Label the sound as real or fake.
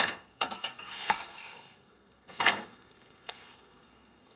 fake